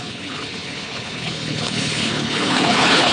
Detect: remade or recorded remade